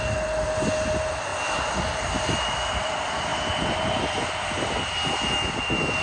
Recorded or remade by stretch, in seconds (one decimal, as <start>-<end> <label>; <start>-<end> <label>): 0.0-6.0 recorded